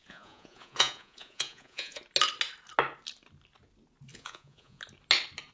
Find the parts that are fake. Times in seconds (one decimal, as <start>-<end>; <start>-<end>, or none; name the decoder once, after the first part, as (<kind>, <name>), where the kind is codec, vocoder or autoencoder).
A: 0.0-2.0 (vocoder, Vocos); 4.1-4.8